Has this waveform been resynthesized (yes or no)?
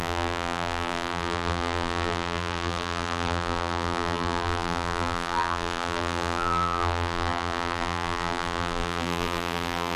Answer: yes